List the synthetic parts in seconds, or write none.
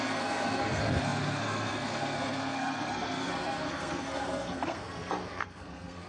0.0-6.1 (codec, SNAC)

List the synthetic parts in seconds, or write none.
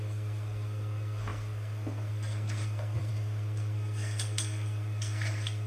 0.0-5.7 (codec, SNAC)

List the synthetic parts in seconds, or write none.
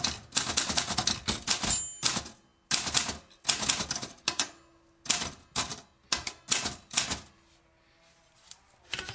none